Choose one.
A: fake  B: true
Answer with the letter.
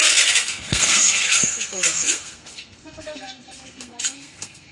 A